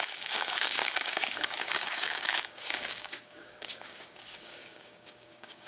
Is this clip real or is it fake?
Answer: fake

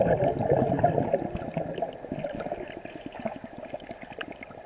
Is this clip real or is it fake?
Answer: real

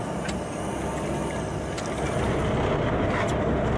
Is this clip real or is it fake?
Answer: real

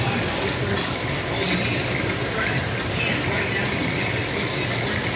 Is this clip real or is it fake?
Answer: real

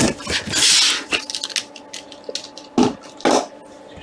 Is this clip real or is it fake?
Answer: real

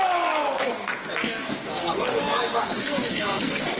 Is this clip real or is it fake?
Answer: fake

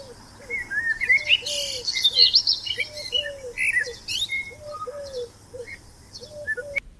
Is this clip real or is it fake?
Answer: real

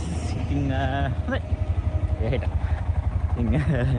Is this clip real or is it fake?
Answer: real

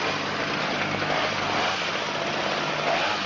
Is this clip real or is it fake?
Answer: real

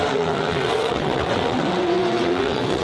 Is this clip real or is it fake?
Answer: fake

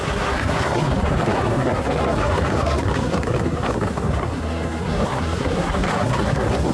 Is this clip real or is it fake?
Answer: fake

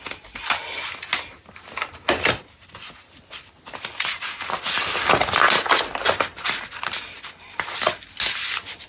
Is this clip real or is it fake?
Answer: real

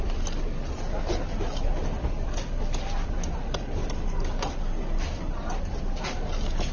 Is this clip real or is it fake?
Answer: real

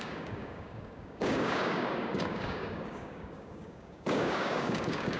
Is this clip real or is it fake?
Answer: fake